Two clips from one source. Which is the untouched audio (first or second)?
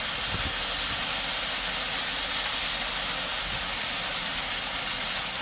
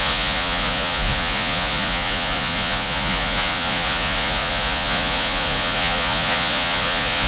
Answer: first